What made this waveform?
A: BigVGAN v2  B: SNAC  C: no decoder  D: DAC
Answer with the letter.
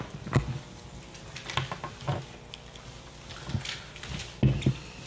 C